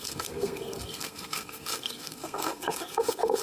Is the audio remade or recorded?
remade